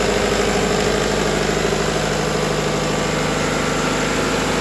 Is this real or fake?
real